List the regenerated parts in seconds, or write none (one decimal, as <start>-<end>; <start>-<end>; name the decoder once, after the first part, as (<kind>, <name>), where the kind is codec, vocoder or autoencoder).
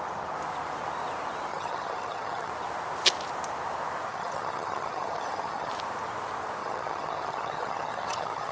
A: 1.5-2.5 (vocoder, HiFi-GAN); 4.1-5.7; 6.6-8.5